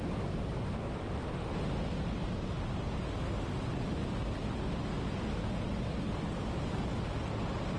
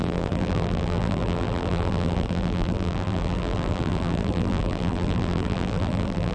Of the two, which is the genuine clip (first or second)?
first